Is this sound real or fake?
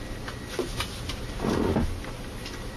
real